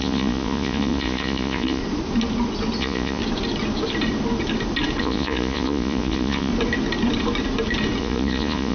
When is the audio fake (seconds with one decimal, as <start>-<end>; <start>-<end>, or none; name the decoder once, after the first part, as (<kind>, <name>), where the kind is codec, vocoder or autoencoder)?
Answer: 0.0-1.8 (vocoder, Vocos); 2.8-3.2; 5.0-6.5; 8.0-8.7